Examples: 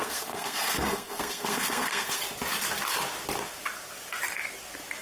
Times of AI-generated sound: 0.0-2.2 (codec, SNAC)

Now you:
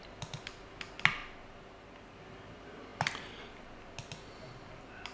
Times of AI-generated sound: none

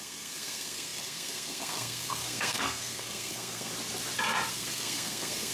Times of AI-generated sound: 0.0-3.7 (codec, SNAC); 4.5-5.5

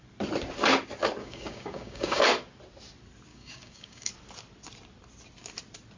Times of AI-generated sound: 1.2-2.2 (codec, DAC); 3.3-4.1